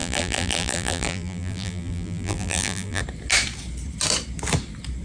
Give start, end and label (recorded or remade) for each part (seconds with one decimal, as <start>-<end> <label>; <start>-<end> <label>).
0.0-3.0 remade; 3.0-5.0 recorded